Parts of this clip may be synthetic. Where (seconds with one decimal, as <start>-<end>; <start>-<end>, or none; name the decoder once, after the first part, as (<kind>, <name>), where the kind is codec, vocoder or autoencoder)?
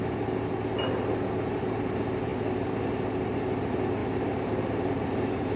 4.0-5.6 (vocoder, BigVGAN v2)